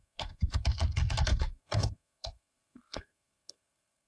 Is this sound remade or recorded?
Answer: remade